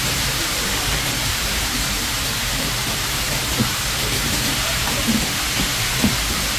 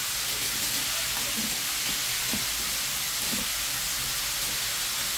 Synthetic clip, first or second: first